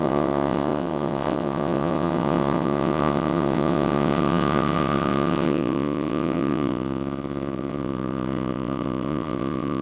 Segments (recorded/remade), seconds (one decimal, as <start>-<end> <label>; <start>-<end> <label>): 0.0-9.8 remade